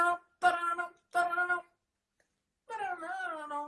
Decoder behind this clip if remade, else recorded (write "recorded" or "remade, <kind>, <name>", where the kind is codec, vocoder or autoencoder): recorded